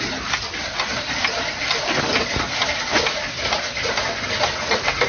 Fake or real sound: real